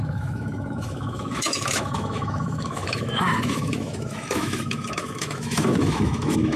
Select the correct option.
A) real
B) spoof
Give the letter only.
B